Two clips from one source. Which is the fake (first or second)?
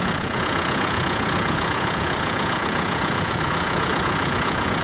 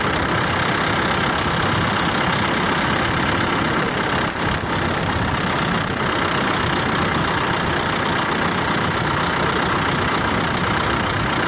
first